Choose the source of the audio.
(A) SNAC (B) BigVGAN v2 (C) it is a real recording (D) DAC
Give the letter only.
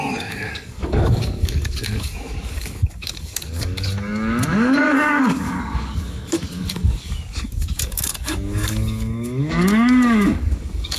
D